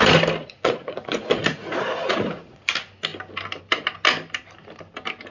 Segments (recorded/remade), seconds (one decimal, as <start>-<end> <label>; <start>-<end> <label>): 0.0-0.4 recorded; 0.4-2.7 remade; 2.7-5.3 recorded